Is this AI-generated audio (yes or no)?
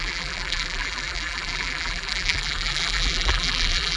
yes